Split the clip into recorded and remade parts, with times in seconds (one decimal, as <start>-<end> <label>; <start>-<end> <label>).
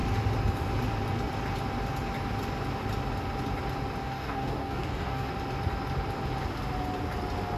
0.0-4.0 recorded; 4.0-5.3 remade; 5.3-7.6 recorded